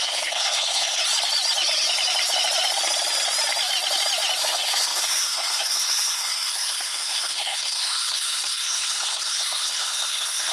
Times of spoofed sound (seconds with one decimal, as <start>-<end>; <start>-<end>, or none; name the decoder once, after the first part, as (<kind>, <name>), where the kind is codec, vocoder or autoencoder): 0.0-1.0 (codec, SNAC); 4.4-10.5